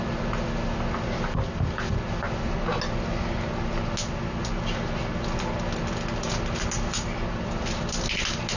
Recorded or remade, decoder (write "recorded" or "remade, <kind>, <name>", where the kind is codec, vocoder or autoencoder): recorded